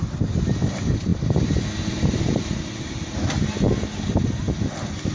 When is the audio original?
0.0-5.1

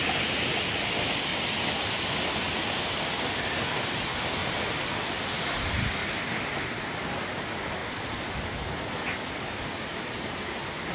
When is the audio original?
0.0-10.9